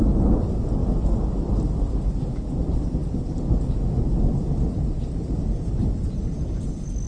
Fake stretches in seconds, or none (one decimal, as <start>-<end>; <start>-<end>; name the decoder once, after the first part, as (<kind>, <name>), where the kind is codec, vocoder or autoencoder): none